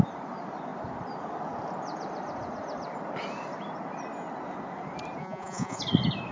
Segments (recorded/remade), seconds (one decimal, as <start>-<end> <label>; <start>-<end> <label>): 0.0-5.2 recorded; 5.2-5.8 remade; 5.8-6.3 recorded